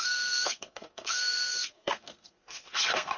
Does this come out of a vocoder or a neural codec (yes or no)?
yes